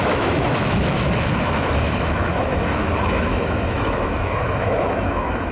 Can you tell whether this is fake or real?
fake